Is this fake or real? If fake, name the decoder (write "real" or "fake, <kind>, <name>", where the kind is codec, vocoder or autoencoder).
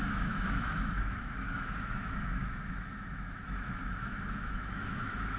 fake, autoencoder, DAC-VAE